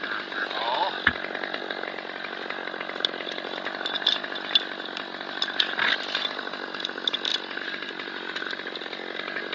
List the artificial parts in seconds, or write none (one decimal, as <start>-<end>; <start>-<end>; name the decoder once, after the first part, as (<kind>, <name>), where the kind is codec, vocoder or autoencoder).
none